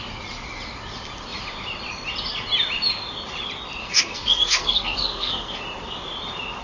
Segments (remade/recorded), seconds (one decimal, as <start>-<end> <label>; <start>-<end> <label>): 0.0-3.8 recorded; 3.8-5.6 remade; 5.6-6.6 recorded